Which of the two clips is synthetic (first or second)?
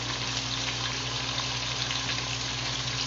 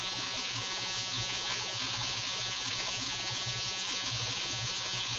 second